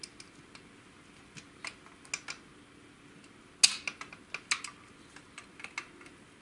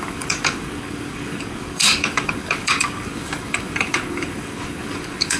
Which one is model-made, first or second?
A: second